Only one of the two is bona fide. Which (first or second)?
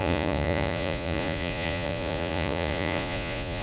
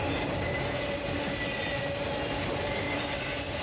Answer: second